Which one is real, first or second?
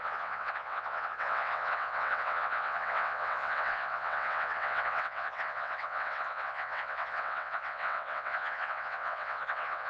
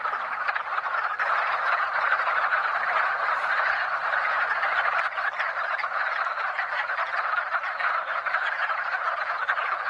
second